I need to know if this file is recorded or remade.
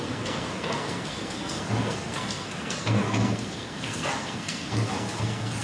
remade